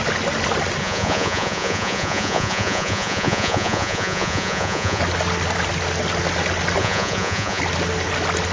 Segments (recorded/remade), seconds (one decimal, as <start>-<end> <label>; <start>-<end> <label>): 0.0-0.8 recorded; 0.8-5.0 remade; 5.0-6.8 recorded; 6.8-7.6 remade; 7.6-8.5 recorded

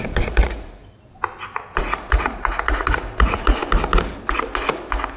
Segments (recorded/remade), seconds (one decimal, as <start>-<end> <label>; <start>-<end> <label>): 0.0-0.8 remade; 0.8-1.8 recorded; 1.8-3.6 remade; 3.6-5.2 recorded

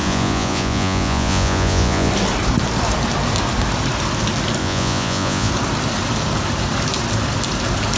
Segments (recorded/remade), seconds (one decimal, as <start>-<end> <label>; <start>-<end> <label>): 0.0-2.1 remade; 2.1-4.6 recorded; 4.6-5.5 remade; 5.5-8.0 recorded

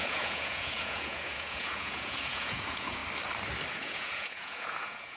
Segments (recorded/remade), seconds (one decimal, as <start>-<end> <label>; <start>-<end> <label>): 0.0-3.0 remade; 3.0-3.7 recorded; 3.7-5.2 remade

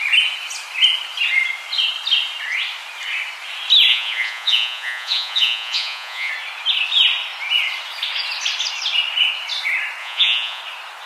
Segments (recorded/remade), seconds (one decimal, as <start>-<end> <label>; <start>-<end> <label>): 0.0-3.9 recorded; 3.9-6.3 remade; 6.3-10.0 recorded; 10.0-10.6 remade; 10.6-11.1 recorded

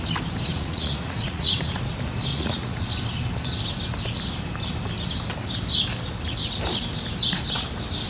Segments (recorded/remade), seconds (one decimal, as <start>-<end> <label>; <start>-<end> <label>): 0.0-0.5 recorded; 0.5-1.8 remade; 1.8-2.3 recorded; 2.3-2.9 remade; 2.9-8.1 recorded